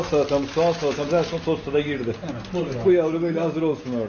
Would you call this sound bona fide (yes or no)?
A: yes